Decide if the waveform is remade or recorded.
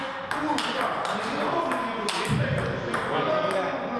recorded